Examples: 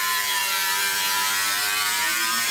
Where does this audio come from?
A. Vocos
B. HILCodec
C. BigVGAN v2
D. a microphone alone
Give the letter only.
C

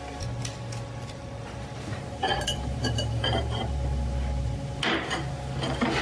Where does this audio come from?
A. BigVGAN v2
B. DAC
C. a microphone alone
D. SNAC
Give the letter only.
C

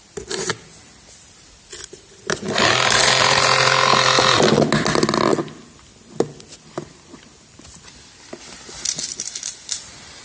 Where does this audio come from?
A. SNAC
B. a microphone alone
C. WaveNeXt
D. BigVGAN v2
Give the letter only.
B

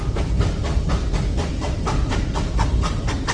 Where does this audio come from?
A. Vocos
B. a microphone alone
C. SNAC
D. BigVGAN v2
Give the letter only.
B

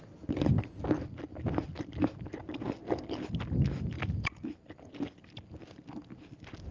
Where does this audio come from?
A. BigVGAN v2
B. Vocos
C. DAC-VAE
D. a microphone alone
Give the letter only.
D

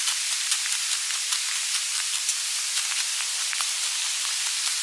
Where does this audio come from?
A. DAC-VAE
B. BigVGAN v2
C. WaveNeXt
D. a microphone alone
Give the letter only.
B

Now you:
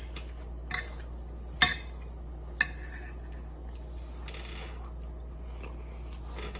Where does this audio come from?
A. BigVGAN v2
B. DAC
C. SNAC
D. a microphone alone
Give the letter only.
D